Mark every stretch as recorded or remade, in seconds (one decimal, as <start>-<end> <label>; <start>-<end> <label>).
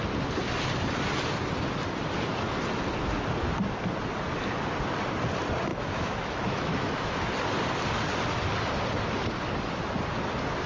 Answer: 0.0-5.7 recorded; 5.7-7.3 remade; 7.3-10.7 recorded